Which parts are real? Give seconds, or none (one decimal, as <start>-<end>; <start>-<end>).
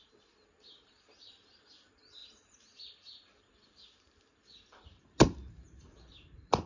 0.0-6.7